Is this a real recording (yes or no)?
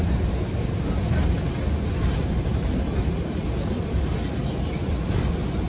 yes